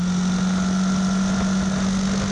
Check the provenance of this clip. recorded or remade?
recorded